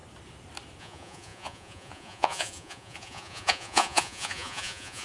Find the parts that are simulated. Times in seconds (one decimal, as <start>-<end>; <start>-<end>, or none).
0.8-5.0